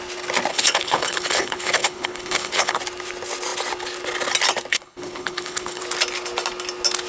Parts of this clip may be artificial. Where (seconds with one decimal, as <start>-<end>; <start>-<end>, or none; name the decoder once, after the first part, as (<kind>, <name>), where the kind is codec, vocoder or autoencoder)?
0.5-2.8 (codec, HILCodec); 4.7-5.8